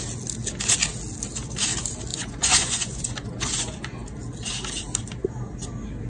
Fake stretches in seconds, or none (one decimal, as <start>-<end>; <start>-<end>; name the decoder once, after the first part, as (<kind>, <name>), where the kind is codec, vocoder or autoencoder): 2.1-3.9 (vocoder, Vocos)